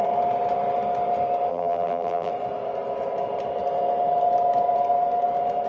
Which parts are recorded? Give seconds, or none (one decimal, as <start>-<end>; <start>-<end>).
0.0-1.5; 2.3-5.7